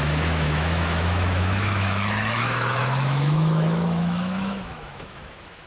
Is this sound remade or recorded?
remade